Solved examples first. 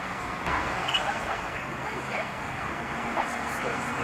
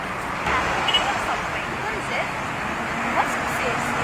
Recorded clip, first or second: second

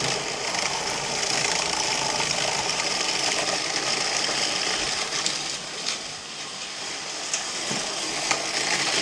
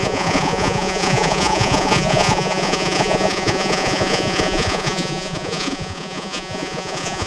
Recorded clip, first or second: first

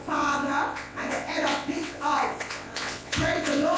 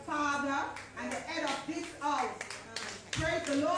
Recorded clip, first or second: second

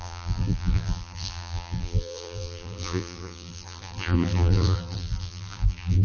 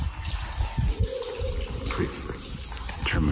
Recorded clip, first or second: second